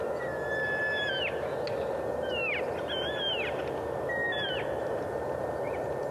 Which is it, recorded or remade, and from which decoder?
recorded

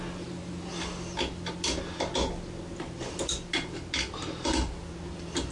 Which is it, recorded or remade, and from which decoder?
recorded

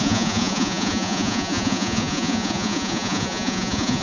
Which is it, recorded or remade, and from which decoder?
remade, vocoder, Vocos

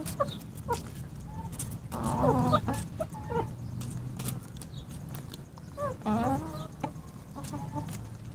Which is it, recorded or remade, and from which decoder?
recorded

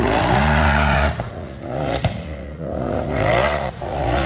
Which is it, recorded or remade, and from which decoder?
remade, vocoder, Vocos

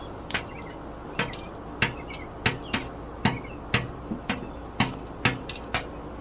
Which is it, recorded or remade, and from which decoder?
recorded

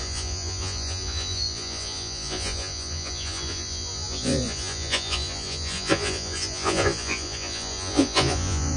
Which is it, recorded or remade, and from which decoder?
remade, vocoder, Vocos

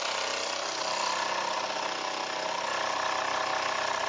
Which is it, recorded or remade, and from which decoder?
recorded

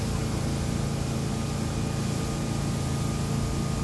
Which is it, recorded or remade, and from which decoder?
recorded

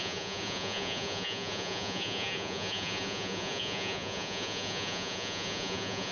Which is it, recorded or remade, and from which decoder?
remade, vocoder, Vocos